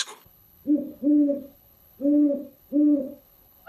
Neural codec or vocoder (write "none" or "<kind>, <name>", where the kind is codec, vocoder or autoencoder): codec, HILCodec